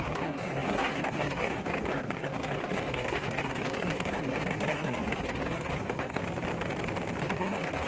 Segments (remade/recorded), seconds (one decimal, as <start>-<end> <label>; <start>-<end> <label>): 0.0-6.2 remade; 6.2-7.2 recorded; 7.2-7.9 remade